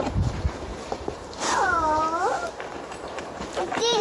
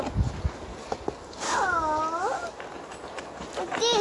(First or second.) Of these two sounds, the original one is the second